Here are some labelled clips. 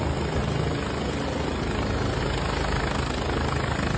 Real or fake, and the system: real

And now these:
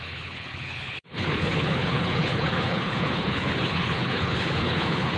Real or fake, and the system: fake, codec, HILCodec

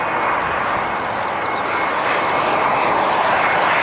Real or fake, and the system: real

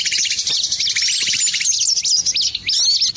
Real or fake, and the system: real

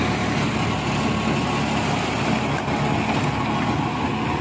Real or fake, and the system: real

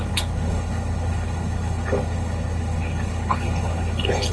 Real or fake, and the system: fake, codec, HILCodec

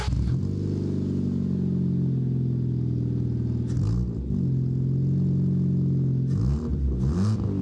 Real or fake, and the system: real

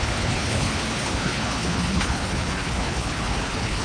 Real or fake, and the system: fake, codec, HILCodec